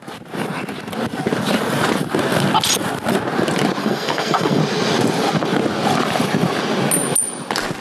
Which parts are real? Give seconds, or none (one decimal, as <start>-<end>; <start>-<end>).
0.0-3.8; 4.6-7.8